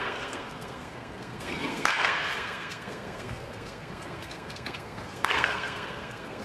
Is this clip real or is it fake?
fake